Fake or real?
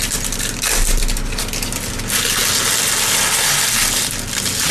real